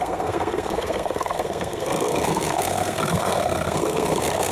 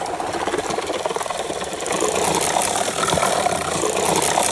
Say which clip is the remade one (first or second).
first